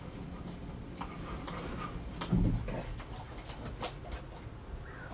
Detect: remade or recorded recorded